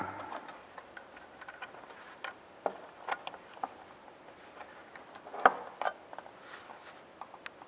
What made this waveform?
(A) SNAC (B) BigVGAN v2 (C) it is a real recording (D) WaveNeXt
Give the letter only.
C